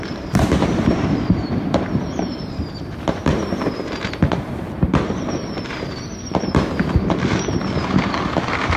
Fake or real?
fake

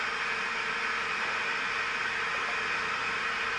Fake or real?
real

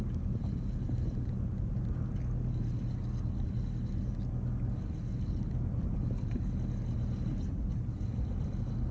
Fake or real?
real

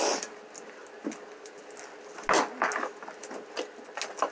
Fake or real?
real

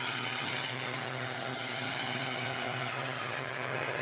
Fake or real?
fake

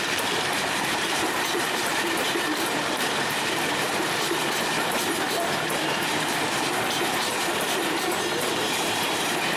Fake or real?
fake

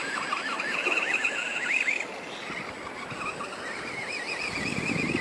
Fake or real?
real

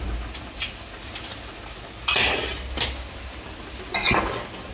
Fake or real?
real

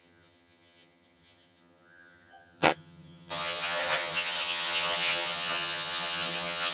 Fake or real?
fake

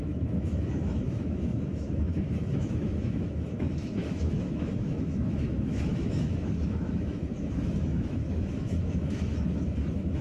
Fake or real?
fake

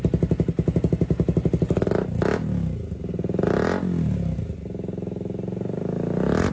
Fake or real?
real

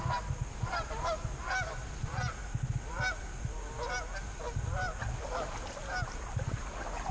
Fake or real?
real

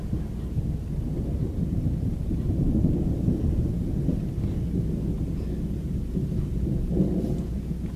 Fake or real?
real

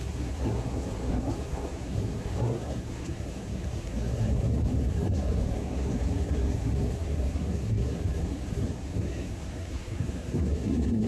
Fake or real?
fake